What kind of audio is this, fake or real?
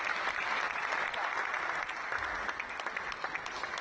real